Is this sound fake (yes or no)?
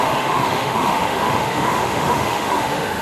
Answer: yes